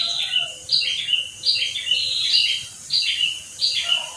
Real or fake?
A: real